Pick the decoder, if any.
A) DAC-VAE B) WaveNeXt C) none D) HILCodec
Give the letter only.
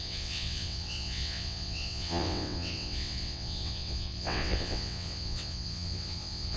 B